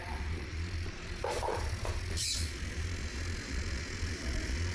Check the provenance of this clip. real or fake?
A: fake